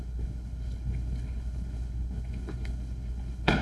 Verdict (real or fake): fake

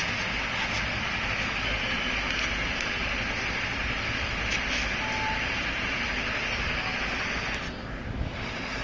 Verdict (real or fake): real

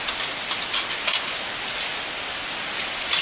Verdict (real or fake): real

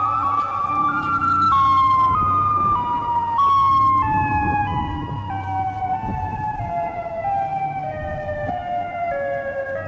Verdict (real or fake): real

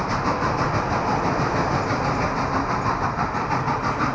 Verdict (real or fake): real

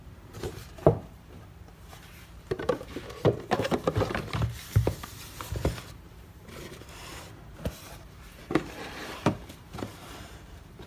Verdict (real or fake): fake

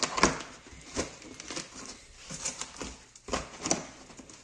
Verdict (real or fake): real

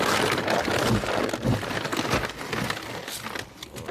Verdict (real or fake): real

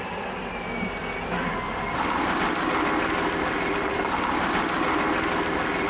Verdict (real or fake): real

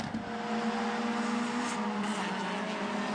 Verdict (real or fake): real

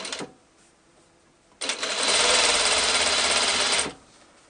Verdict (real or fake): real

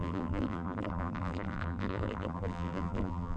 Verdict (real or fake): fake